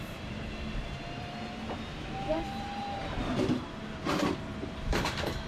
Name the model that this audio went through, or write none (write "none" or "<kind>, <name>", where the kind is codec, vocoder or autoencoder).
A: vocoder, BigVGAN v2